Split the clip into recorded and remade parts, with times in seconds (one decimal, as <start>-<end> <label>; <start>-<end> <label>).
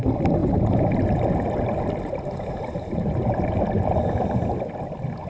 0.0-0.4 recorded; 0.4-3.6 remade; 3.6-5.3 recorded